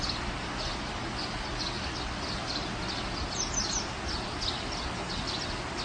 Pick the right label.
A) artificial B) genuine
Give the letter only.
B